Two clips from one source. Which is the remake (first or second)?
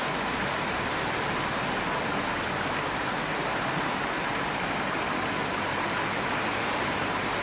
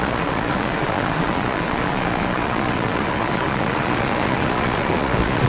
second